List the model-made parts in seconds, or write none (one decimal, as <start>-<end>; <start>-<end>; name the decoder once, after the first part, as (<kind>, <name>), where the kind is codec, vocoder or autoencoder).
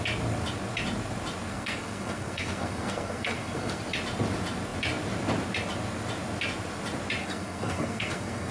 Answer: 1.5-3.8 (codec, SNAC); 7.2-8.5